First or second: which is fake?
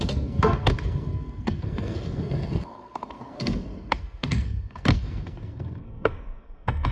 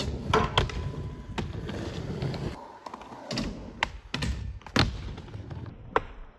first